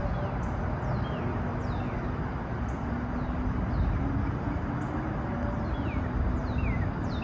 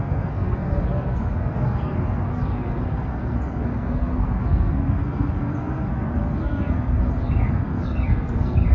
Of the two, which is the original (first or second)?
first